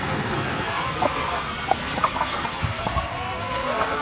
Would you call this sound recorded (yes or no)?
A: no